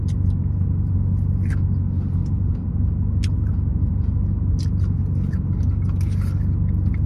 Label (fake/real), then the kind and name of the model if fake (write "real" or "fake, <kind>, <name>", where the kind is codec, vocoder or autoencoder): real